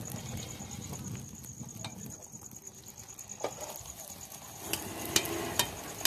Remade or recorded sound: recorded